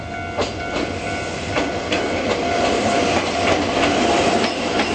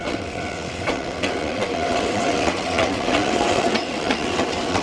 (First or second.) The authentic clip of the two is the first